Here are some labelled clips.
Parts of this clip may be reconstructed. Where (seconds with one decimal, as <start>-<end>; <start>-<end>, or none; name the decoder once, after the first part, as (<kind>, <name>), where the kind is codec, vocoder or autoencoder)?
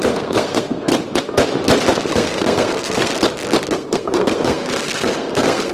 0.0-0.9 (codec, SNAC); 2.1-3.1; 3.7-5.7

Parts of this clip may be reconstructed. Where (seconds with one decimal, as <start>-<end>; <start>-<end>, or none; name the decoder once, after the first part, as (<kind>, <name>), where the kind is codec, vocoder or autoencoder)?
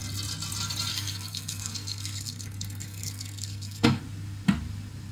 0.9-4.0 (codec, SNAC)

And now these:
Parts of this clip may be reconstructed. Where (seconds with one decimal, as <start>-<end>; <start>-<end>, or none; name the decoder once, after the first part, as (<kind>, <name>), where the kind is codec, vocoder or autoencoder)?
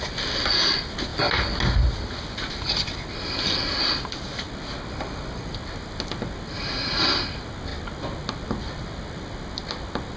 none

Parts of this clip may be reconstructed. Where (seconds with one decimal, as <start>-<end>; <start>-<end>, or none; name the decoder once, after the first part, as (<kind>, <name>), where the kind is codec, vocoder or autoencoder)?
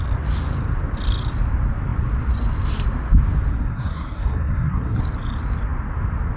3.5-5.0 (codec, SNAC)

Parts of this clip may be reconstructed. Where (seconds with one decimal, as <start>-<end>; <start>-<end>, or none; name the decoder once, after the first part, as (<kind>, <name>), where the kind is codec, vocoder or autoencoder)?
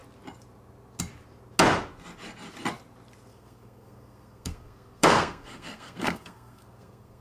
3.3-7.2 (codec, SNAC)